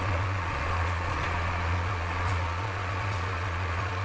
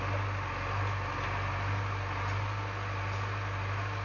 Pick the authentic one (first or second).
second